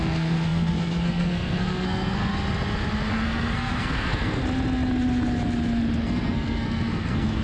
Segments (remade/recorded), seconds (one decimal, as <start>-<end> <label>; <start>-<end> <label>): 0.0-2.3 remade; 2.3-3.1 recorded; 3.1-4.4 remade; 4.4-6.0 recorded; 6.0-7.4 remade